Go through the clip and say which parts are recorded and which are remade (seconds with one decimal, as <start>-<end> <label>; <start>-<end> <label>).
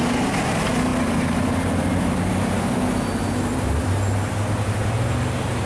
0.0-5.7 recorded